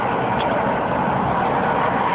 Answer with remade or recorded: recorded